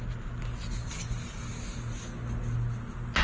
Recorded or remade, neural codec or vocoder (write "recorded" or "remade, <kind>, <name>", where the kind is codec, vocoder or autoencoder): recorded